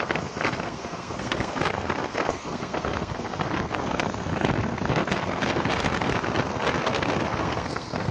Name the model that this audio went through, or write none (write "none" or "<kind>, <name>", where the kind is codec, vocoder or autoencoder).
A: codec, SNAC